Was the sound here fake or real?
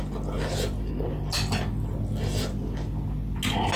real